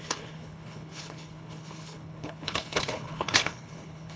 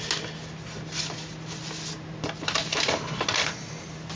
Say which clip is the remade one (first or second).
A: first